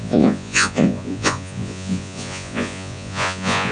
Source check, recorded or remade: remade